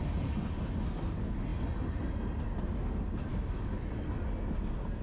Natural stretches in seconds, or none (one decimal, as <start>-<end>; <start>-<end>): 0.0-3.3; 3.9-5.0